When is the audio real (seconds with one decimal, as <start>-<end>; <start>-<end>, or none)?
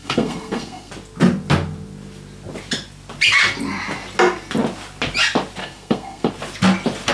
0.9-5.6; 6.3-7.1